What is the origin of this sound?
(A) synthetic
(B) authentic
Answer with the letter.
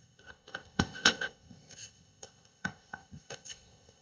A